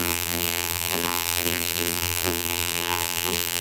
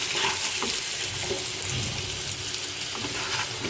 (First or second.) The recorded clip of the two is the second